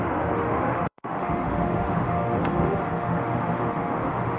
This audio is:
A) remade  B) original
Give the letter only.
A